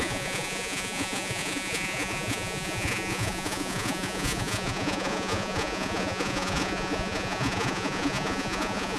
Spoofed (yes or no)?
yes